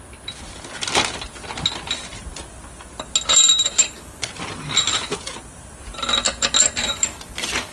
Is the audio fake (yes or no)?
no